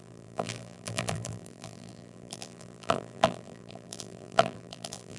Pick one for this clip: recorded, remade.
remade